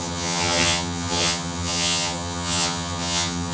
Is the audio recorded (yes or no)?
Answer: no